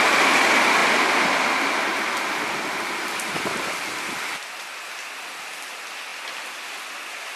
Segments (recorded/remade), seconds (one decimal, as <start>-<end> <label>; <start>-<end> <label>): 0.0-7.4 recorded